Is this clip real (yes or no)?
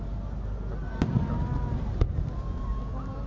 yes